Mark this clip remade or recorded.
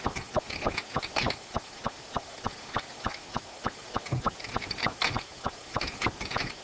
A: recorded